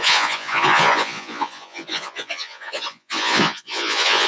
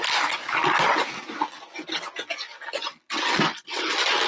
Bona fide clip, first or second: second